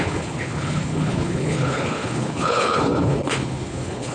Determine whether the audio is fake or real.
fake